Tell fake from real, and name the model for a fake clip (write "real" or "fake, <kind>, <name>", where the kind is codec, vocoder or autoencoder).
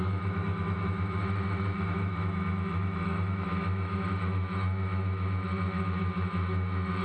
fake, autoencoder, DAC-VAE